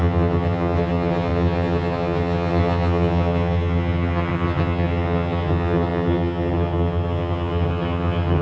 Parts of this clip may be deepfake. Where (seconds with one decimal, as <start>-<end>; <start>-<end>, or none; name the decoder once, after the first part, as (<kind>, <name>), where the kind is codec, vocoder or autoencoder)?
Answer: 0.0-8.4 (vocoder, HiFi-GAN)